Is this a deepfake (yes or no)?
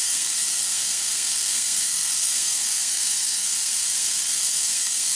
yes